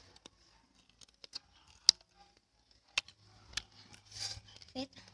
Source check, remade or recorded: recorded